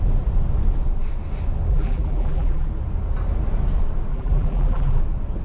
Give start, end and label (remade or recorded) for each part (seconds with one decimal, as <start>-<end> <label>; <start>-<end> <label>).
0.0-1.7 recorded; 1.7-2.7 remade; 2.7-4.1 recorded; 4.1-5.0 remade; 5.0-5.4 recorded